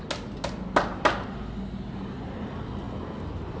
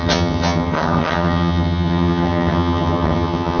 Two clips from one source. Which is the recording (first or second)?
first